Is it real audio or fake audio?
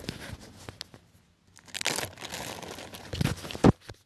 real